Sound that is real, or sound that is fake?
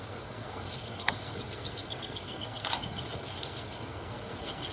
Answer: fake